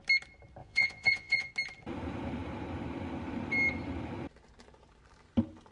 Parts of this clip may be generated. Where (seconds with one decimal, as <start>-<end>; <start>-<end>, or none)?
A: 0.6-1.5